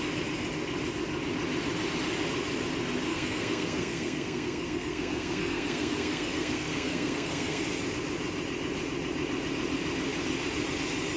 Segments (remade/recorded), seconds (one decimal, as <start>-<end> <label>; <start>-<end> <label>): 0.0-3.1 recorded; 3.1-7.6 remade; 7.6-11.2 recorded